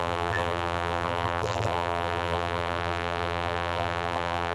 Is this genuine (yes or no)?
no